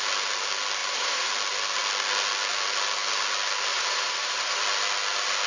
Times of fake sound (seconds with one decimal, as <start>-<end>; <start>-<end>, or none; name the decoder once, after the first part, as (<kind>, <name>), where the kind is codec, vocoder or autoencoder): 0.8-1.3 (vocoder, BigVGAN v2); 3.7-4.6